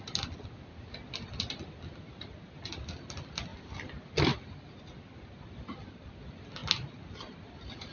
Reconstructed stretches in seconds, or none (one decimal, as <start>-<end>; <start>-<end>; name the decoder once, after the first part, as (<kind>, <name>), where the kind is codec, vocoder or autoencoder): none